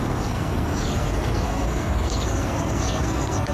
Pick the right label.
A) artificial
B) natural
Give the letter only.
A